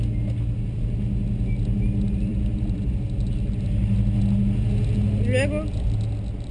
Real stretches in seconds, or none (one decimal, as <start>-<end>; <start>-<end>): 0.0-2.3; 2.9-6.5